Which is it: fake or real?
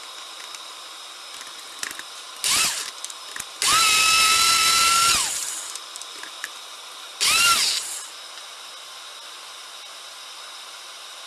real